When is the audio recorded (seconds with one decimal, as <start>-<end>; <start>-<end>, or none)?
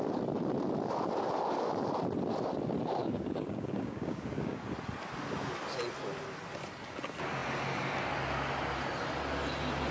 0.0-3.0; 4.6-9.9